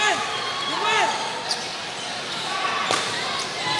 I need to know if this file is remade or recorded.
remade